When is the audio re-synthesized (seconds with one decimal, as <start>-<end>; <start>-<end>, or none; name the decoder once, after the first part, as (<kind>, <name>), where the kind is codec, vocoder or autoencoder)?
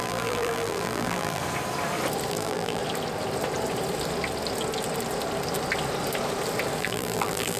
0.0-1.4 (vocoder, BigVGAN v2); 2.3-2.8; 6.8-7.6